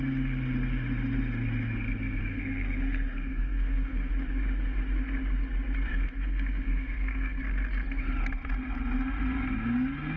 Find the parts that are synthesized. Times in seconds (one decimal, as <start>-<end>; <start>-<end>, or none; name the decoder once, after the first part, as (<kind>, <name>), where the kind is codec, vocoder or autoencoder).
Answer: 2.2-4.1 (codec, SNAC); 5.9-7.4

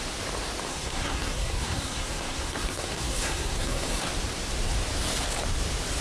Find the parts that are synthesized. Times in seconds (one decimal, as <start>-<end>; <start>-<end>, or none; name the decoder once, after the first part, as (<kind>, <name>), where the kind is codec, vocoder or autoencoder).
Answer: 0.7-4.0 (codec, SNAC)

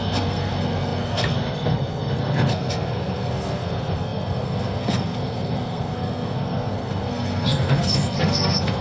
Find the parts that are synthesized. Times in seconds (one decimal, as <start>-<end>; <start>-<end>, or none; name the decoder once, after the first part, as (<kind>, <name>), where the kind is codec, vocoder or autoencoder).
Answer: 0.0-8.8 (codec, SNAC)

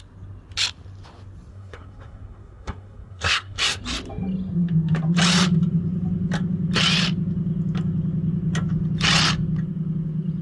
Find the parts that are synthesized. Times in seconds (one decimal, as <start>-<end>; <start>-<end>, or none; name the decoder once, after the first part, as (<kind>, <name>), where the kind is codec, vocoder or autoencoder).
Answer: 1.5-3.8 (codec, SNAC)

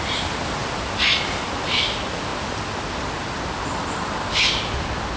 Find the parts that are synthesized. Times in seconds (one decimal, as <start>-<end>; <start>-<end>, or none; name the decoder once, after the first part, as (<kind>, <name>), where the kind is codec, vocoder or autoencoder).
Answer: none